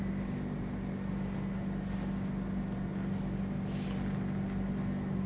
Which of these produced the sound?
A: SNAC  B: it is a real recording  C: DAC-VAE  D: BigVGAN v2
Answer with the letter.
B